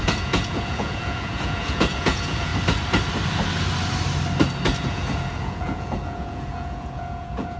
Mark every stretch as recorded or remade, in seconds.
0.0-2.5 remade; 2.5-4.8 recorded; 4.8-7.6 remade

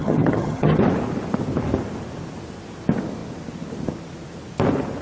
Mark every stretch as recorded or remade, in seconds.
0.0-0.8 remade; 0.8-5.0 recorded